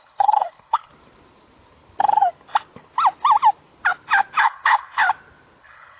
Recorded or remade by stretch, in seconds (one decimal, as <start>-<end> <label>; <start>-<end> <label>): 0.0-0.9 remade; 0.9-4.4 recorded; 4.4-5.0 remade; 5.0-5.6 recorded; 5.6-6.0 remade